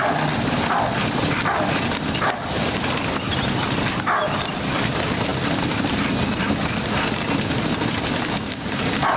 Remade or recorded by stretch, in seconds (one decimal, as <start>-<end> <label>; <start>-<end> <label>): 0.0-9.2 recorded